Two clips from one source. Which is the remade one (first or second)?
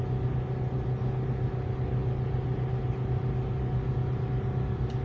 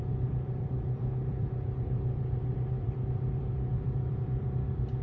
second